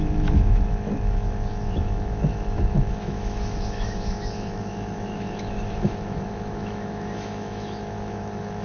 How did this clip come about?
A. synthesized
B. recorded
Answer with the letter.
A